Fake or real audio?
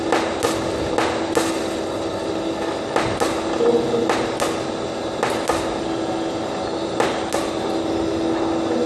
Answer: real